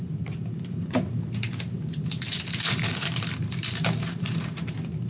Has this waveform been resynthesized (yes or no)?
yes